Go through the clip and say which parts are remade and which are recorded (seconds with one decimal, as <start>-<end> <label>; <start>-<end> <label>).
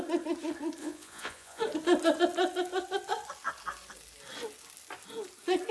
0.0-0.8 recorded; 0.8-1.6 remade; 1.6-5.7 recorded